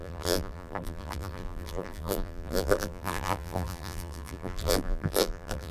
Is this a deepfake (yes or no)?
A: yes